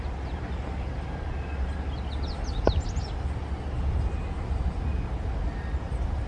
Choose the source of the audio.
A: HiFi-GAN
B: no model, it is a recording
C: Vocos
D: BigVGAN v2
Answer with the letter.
B